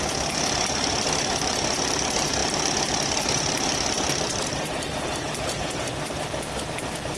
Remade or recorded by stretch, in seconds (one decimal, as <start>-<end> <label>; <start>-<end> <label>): 0.0-7.2 remade